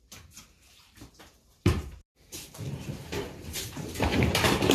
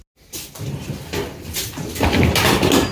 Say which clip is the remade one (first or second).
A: first